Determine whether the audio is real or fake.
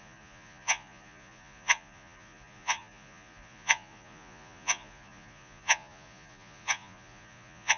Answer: fake